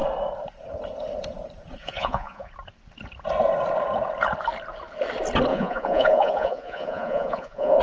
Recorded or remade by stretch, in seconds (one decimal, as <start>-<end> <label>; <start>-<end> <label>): 0.0-1.8 recorded; 1.8-2.5 remade; 2.5-5.5 recorded; 5.5-7.8 remade